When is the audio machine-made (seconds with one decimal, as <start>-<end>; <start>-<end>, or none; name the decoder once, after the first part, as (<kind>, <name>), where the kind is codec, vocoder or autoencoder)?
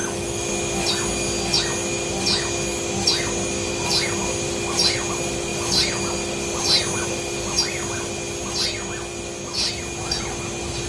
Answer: 0.0-0.5 (autoencoder, DAC-VAE)